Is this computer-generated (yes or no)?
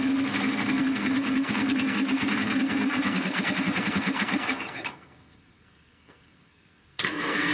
yes